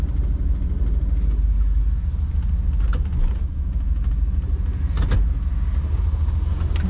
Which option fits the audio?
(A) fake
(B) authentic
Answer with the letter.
B